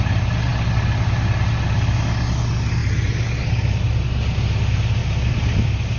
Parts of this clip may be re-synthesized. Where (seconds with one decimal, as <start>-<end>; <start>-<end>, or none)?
none